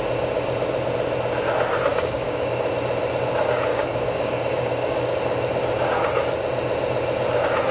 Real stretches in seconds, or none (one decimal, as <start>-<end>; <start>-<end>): 0.0-1.9; 2.7-3.7; 5.2-7.7